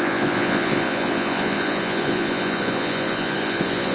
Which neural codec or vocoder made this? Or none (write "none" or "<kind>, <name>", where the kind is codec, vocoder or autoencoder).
vocoder, Vocos